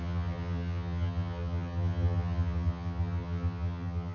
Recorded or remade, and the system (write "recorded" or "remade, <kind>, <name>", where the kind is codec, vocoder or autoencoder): remade, vocoder, HiFi-GAN